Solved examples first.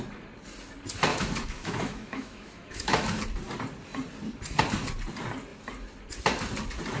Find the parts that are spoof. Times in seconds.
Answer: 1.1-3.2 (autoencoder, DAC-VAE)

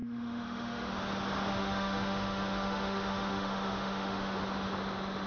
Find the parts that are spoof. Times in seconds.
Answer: 0.0-0.9 (autoencoder, DAC-VAE); 1.5-4.4

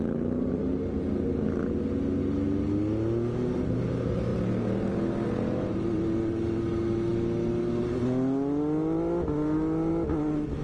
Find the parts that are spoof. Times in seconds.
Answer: none

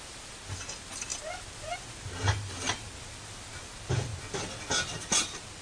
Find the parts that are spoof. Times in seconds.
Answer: none